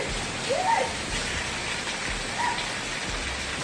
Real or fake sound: real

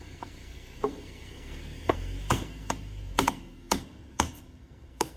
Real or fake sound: fake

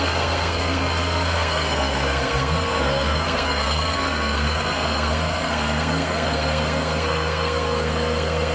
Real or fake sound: fake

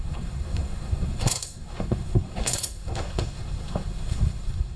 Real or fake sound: fake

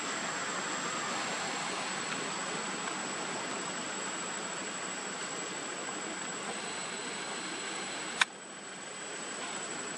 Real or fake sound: real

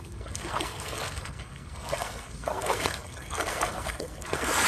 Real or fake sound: fake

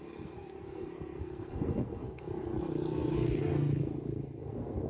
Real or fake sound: fake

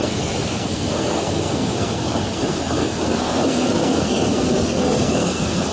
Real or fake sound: fake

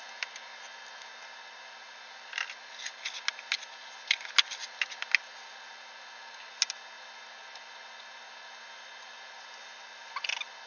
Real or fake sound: real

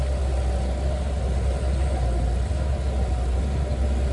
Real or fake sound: real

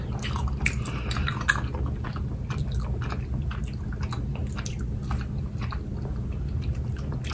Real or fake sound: real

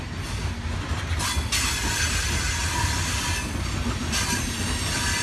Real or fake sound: real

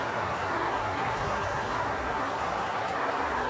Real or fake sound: fake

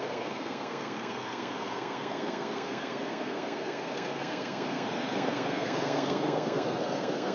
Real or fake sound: fake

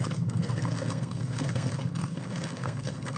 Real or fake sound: fake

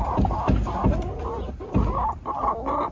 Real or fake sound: real